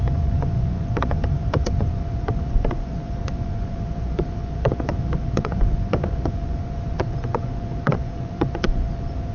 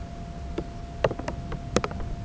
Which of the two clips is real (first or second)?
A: second